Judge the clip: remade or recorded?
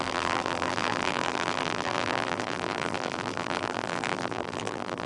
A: remade